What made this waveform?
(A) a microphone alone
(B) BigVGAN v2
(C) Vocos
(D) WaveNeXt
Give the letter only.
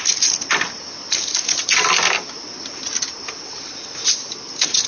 A